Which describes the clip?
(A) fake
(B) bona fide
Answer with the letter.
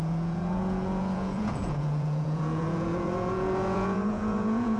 A